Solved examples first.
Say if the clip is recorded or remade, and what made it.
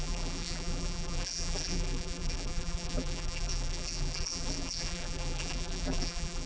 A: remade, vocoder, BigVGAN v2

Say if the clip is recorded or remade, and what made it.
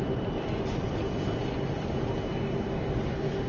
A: recorded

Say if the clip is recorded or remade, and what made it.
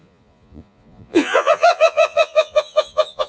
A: remade, vocoder, Vocos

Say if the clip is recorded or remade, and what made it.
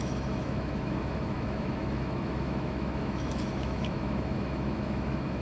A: remade, autoencoder, DAC-VAE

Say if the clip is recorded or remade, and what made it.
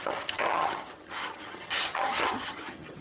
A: remade, vocoder, HiFi-GAN